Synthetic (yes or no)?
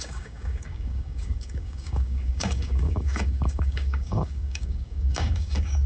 yes